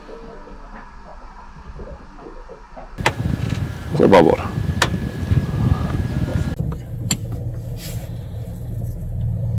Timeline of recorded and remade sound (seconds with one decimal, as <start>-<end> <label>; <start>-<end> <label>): 0.0-9.6 recorded